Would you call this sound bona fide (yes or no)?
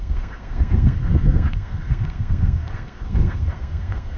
no